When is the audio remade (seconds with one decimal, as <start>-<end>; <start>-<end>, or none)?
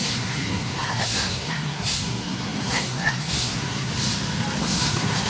0.0-3.9; 4.6-5.3